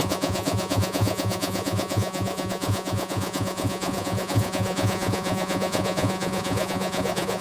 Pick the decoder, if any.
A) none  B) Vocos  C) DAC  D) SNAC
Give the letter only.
B